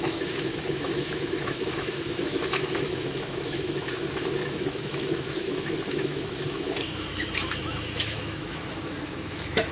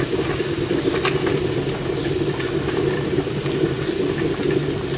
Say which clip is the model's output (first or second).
first